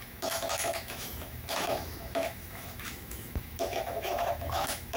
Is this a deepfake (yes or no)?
yes